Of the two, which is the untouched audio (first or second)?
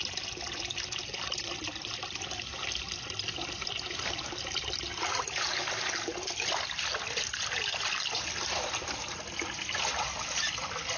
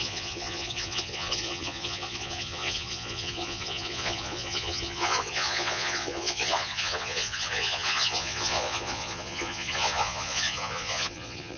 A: first